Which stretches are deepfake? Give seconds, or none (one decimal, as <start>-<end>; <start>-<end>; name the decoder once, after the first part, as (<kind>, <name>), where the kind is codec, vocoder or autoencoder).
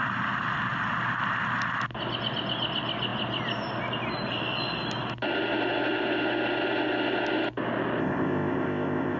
8.0-9.2 (codec, ZipCodec)